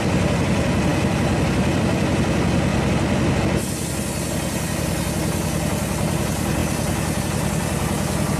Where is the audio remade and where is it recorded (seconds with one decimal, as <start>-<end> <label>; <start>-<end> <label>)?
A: 0.0-8.4 recorded